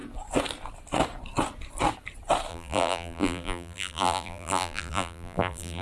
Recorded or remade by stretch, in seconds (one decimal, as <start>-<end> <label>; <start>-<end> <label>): 0.0-2.5 recorded; 2.5-5.8 remade